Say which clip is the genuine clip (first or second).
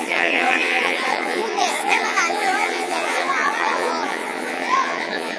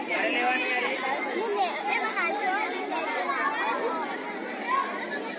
second